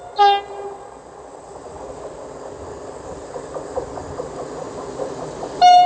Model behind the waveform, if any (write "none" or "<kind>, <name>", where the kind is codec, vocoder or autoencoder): none